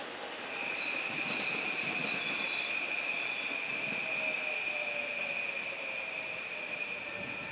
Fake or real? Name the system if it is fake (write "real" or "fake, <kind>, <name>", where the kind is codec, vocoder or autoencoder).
real